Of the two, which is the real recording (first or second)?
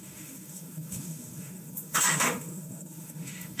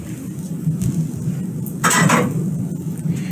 second